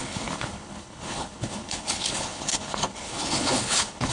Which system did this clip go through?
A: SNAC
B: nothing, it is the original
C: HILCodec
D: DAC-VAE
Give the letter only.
C